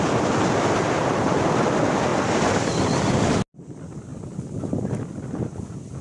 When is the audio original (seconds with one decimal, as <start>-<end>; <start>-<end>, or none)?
0.0-6.0